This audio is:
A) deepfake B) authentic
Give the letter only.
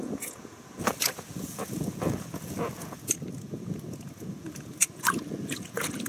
A